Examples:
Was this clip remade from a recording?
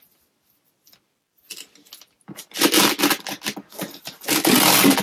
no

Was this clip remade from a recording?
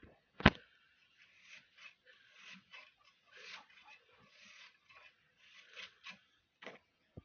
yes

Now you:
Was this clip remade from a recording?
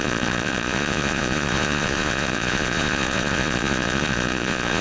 yes